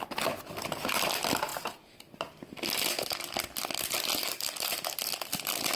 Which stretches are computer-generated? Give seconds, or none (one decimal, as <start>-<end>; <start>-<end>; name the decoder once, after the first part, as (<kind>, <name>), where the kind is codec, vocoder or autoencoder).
none